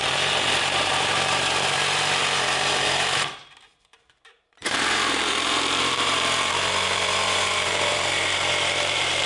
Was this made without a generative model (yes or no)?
no